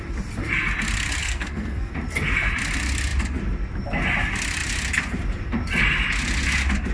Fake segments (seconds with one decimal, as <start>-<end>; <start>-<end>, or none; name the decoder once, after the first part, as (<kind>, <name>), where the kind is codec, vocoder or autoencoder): 1.2-1.9 (codec, SNAC)